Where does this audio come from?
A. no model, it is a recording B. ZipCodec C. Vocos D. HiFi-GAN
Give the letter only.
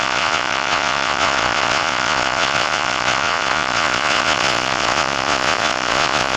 C